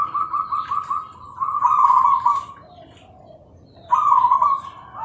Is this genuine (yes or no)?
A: yes